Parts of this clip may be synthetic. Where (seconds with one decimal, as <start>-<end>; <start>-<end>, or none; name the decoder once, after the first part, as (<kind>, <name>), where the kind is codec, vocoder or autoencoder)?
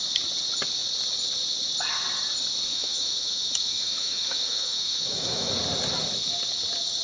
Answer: 2.7-5.5 (autoencoder, DAC-VAE)